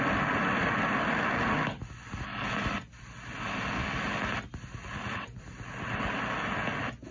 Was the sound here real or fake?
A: real